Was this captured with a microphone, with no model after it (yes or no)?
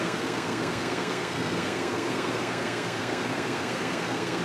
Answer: no